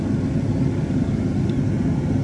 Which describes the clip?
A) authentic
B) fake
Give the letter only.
A